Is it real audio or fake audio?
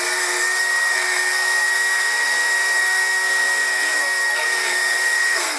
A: fake